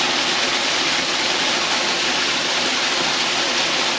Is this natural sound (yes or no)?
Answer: yes